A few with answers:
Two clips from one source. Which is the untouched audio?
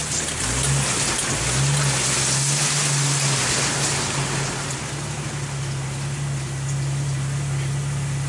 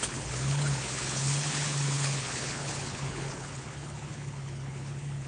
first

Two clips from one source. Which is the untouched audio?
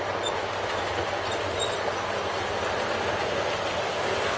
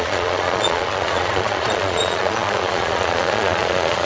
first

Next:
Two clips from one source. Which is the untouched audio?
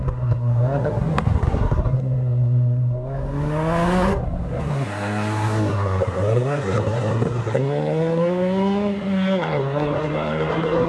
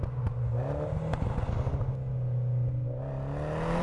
second